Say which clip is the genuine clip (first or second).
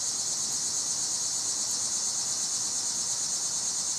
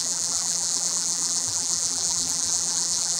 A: first